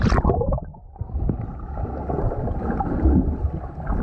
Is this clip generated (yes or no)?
no